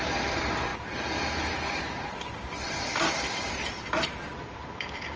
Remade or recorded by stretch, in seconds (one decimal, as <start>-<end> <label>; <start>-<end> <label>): 0.0-5.2 remade